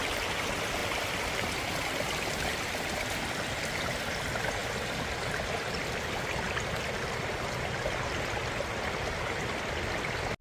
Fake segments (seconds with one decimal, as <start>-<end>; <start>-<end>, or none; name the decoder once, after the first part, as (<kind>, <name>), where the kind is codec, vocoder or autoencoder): none